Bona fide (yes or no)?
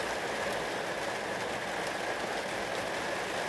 yes